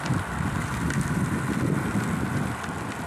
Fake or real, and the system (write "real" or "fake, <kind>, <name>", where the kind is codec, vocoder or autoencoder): real